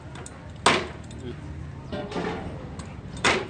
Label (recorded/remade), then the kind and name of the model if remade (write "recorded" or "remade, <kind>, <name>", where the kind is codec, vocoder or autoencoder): recorded